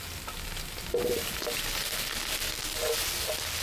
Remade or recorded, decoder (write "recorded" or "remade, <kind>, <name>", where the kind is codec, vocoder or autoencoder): recorded